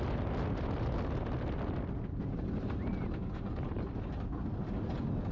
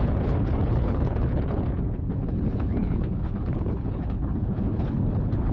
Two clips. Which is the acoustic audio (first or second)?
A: first